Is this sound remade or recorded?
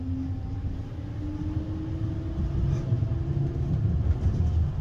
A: recorded